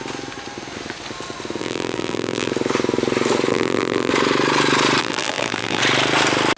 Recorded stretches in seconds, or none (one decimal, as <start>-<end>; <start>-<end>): 0.0-1.6; 2.5-3.5; 4.1-5.0; 5.8-6.6

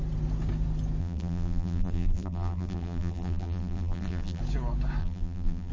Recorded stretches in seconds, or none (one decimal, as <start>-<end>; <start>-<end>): 0.0-1.0; 4.4-5.0

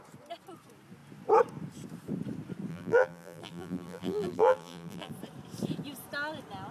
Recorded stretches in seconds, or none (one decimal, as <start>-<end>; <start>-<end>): 0.0-2.7; 5.1-6.7

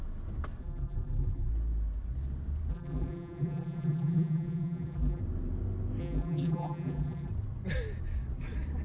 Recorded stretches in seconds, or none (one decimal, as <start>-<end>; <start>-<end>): 0.0-0.6; 1.5-2.7; 5.2-6.0; 7.3-8.8

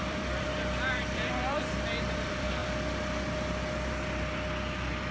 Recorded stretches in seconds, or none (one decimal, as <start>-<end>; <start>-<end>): 2.6-5.1

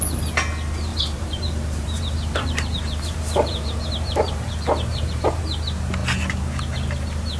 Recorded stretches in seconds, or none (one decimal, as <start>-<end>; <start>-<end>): 0.0-0.9; 4.5-4.9; 5.4-7.4

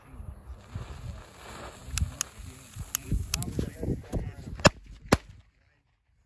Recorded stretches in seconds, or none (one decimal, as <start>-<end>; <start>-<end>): 0.0-6.3